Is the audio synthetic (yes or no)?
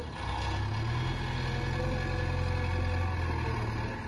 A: no